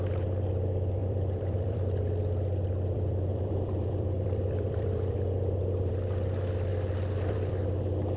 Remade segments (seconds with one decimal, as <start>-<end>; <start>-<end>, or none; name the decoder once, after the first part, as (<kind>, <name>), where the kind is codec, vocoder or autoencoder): 1.0-5.9 (vocoder, BigVGAN v2); 6.7-7.5